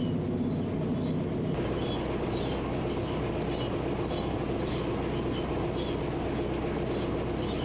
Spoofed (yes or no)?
no